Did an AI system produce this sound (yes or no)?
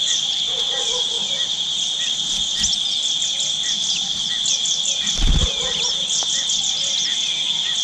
no